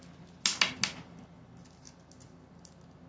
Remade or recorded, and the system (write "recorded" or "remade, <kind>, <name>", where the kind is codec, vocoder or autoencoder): recorded